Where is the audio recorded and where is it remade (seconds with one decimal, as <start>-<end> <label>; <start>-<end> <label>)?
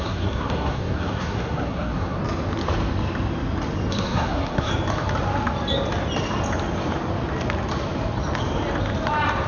0.0-2.2 remade; 2.2-3.9 recorded; 3.9-4.7 remade; 4.7-9.5 recorded